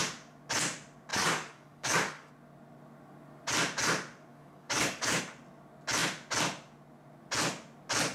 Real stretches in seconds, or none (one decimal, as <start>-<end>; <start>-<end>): 0.0-1.1; 2.3-4.3; 5.2-8.1

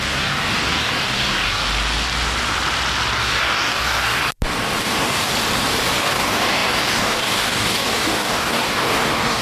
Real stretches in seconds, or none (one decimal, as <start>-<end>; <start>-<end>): 1.6-3.2; 4.2-4.8; 5.3-6.0